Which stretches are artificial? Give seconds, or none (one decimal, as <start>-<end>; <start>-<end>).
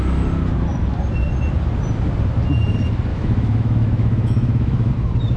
3.1-4.9